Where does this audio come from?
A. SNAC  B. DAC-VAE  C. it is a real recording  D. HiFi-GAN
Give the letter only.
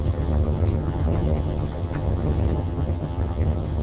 D